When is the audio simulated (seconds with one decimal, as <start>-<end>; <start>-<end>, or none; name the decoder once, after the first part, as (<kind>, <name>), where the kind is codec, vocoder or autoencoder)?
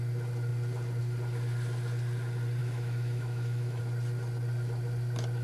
2.6-3.8 (autoencoder, DAC-VAE)